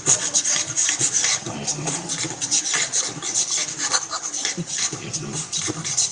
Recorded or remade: remade